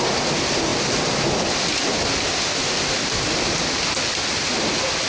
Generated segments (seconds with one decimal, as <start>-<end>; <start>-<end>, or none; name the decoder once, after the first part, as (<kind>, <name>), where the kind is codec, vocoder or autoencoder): none